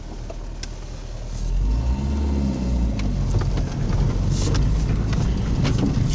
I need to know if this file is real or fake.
real